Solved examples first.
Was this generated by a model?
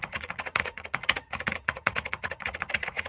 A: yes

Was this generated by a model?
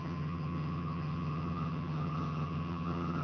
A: yes